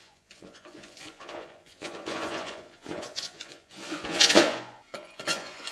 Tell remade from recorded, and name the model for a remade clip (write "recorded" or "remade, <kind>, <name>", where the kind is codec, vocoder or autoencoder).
remade, vocoder, Vocos